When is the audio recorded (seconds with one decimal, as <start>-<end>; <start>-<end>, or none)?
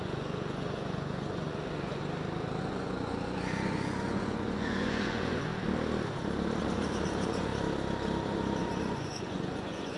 2.0-2.6; 5.5-6.6; 7.5-8.6